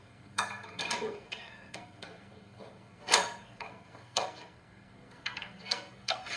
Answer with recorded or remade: remade